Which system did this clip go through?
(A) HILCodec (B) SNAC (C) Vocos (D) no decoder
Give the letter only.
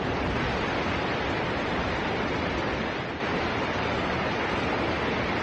D